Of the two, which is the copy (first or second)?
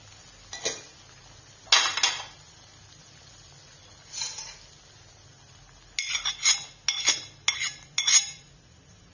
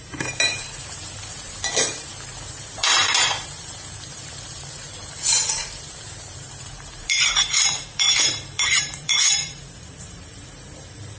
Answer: second